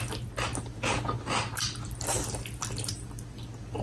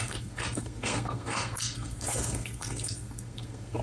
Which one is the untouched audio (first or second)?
first